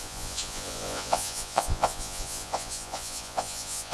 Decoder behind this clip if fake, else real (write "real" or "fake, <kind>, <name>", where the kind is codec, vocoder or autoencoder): fake, vocoder, Vocos